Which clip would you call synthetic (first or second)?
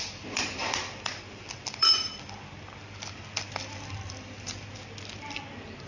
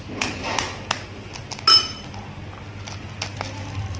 first